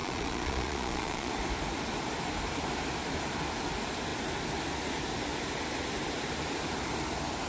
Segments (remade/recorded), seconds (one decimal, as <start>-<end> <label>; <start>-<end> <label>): 0.0-1.3 remade; 1.3-7.5 recorded